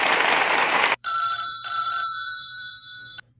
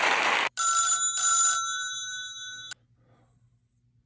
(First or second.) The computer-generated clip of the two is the first